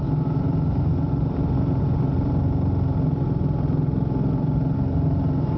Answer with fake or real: real